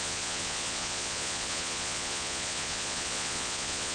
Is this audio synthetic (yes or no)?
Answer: yes